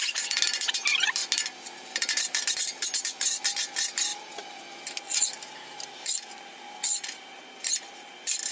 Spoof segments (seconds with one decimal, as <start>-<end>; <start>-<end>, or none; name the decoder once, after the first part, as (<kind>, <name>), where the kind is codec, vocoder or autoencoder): none